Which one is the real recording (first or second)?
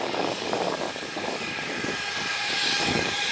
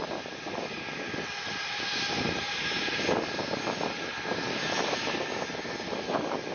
second